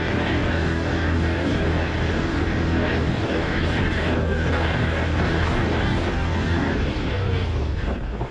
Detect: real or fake fake